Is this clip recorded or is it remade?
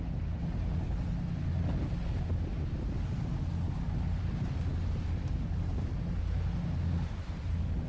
recorded